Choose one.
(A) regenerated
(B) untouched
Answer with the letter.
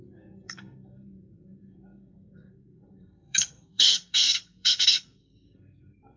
A